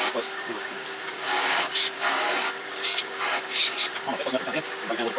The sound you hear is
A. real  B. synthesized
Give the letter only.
B